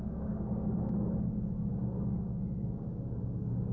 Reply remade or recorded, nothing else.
remade